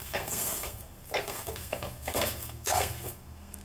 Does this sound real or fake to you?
fake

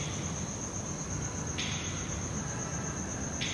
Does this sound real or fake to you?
real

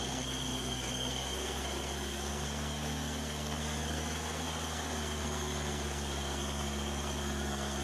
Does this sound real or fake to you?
fake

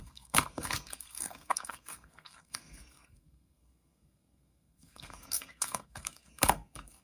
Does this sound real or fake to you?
fake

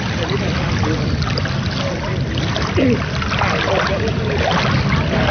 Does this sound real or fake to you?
real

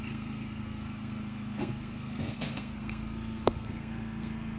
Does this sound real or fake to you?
fake